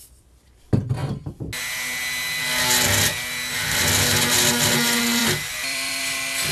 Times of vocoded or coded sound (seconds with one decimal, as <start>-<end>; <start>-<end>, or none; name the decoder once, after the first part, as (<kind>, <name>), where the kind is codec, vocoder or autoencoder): 5.2-6.0 (vocoder, BigVGAN v2)